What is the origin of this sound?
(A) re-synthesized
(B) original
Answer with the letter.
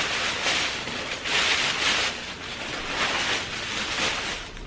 B